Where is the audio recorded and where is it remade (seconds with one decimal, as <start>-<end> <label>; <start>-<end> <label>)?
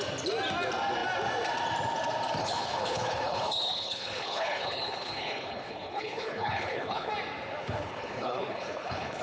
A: 0.0-2.4 recorded; 2.4-7.1 remade; 7.1-7.6 recorded; 7.6-9.2 remade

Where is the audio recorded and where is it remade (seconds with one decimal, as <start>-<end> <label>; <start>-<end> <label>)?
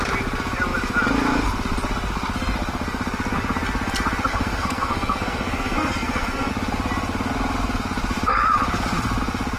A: 0.0-4.3 recorded; 4.3-6.5 remade; 6.5-9.6 recorded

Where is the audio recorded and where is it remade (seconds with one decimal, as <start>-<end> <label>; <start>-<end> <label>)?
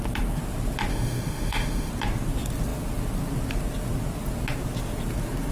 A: 0.0-0.9 recorded; 0.9-1.9 remade; 1.9-5.5 recorded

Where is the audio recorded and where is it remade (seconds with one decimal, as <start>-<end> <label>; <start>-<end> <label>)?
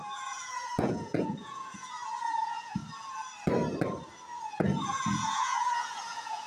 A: 0.0-2.8 remade; 2.8-4.5 recorded; 4.5-6.5 remade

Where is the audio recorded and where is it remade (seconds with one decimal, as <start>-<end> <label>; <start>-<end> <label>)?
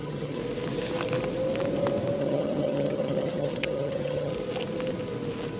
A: 0.0-0.4 remade; 0.4-2.2 recorded; 2.2-4.3 remade; 4.3-5.6 recorded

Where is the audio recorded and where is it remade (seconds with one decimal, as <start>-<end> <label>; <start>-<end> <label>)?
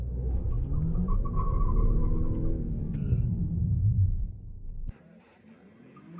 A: 0.0-3.3 recorded; 3.3-5.5 remade; 5.5-6.2 recorded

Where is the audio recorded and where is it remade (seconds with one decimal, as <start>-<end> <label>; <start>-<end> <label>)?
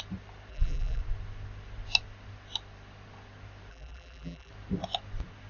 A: 0.0-0.5 recorded; 0.5-1.0 remade; 1.0-3.7 recorded; 3.7-4.5 remade; 4.5-5.5 recorded